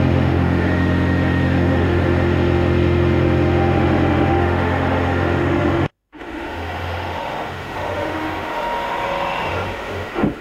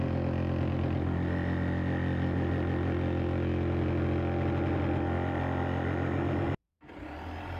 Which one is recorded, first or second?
second